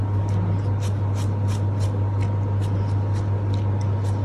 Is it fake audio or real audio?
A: real